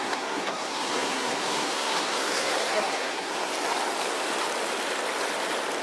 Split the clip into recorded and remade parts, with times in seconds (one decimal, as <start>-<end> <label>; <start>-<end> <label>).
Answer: 0.0-3.5 remade; 3.5-5.8 recorded